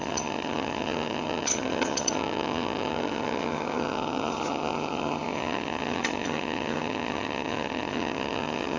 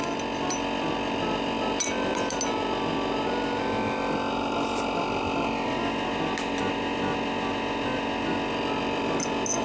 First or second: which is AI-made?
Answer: first